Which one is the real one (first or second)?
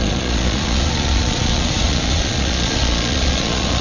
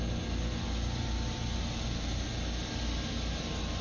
second